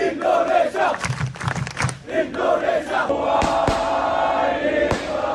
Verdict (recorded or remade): recorded